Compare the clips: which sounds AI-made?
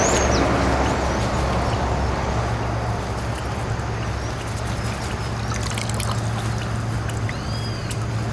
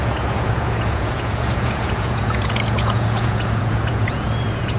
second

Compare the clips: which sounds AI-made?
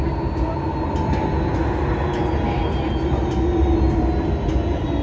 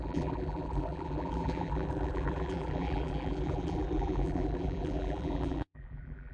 second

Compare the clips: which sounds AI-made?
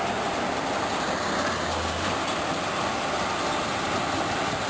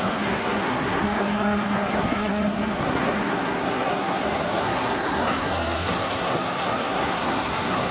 second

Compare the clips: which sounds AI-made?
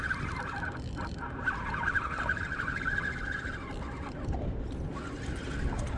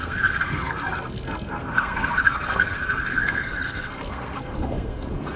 second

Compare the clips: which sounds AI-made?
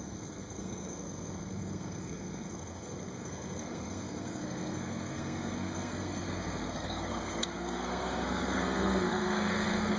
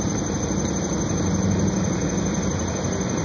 first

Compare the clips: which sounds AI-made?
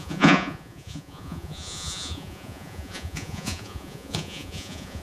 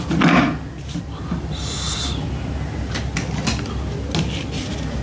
first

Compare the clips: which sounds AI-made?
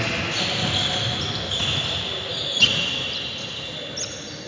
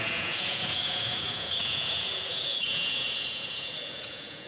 second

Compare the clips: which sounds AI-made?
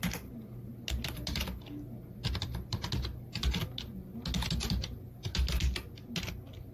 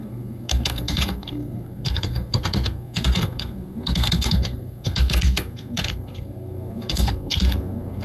second